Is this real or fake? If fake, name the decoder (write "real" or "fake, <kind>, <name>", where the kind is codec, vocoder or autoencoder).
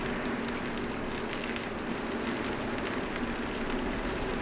real